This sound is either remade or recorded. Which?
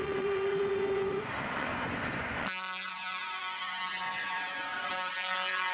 remade